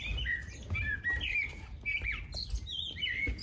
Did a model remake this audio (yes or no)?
no